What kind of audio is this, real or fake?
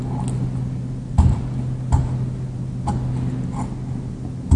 real